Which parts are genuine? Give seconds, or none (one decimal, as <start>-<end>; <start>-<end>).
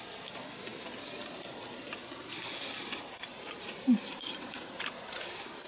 0.0-3.3; 5.2-5.7